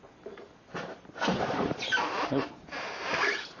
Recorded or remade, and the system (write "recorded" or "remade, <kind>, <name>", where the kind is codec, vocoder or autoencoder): remade, vocoder, BigVGAN v2